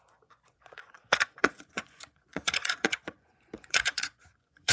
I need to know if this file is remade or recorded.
remade